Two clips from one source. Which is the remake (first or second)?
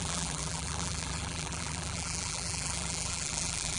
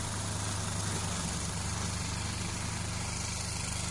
first